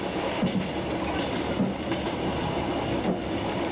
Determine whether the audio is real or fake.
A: real